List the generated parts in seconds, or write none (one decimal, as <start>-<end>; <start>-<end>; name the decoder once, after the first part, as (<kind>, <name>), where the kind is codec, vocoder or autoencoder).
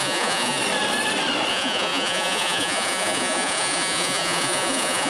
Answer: 0.0-0.6 (vocoder, Vocos); 1.5-5.1